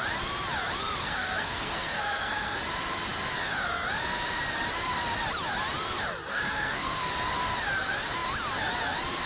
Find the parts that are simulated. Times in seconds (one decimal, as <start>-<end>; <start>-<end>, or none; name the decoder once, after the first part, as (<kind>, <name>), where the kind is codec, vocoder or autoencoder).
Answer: 1.0-2.6 (codec, SNAC); 6.3-7.1